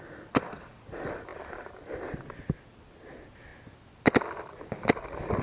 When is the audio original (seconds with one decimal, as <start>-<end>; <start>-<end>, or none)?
0.0-5.4